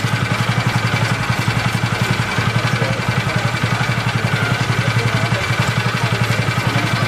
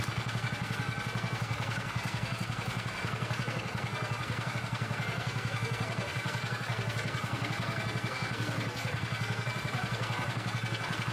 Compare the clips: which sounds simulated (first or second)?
second